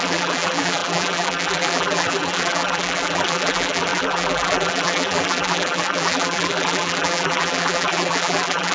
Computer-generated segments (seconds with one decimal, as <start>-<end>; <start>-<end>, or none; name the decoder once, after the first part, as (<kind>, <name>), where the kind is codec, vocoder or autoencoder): 0.0-8.7 (vocoder, BigVGAN v2)